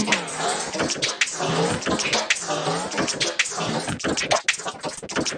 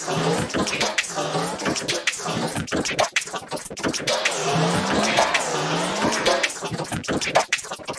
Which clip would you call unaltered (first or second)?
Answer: first